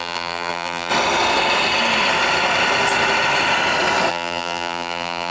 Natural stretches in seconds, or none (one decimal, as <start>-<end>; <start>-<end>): 0.9-4.1